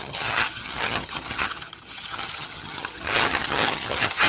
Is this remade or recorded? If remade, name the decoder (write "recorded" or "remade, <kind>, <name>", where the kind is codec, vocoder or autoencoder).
remade, vocoder, HiFi-GAN